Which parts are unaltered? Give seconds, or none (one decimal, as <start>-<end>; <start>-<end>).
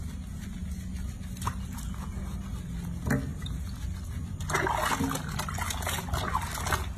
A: 0.0-7.0